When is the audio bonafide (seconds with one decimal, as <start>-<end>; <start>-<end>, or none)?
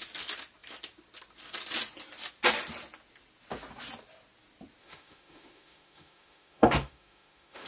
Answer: 0.0-4.8